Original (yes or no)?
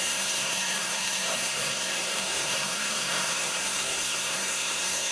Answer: no